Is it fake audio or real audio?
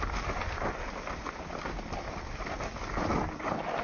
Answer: real